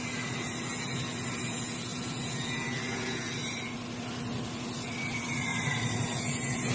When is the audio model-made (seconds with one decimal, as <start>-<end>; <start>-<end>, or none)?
5.5-6.2